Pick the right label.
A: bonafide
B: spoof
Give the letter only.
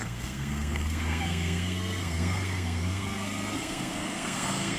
B